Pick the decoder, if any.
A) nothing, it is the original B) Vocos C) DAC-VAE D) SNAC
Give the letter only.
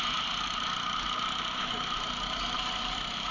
A